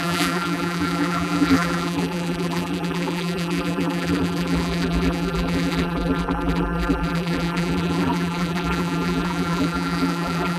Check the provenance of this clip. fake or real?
fake